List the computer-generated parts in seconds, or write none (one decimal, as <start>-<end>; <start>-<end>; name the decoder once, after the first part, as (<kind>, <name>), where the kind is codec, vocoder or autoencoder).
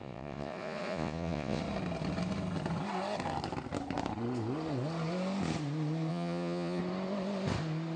0.0-1.6 (vocoder, Vocos); 6.1-6.8